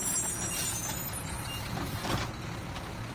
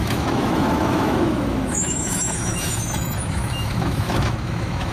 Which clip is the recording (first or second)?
first